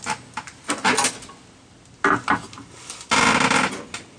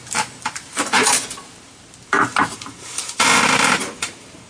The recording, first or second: first